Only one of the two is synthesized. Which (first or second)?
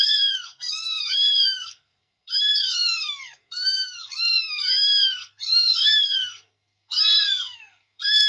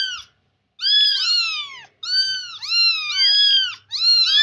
first